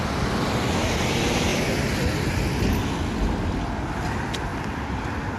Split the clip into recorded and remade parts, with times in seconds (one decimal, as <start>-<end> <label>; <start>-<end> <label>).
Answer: 0.0-5.4 recorded